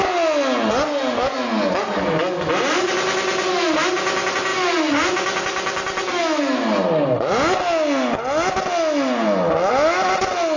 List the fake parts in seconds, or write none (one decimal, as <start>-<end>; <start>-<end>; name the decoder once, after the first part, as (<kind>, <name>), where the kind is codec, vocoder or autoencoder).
none